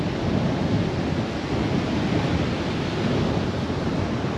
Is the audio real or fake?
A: real